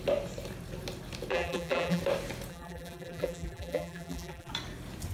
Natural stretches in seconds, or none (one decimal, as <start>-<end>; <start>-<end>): 0.0-1.3; 2.0-2.5; 4.5-5.1